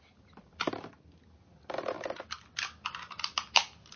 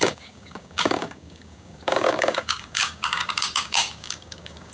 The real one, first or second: first